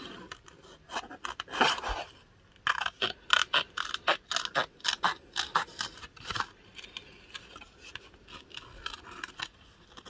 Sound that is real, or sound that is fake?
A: real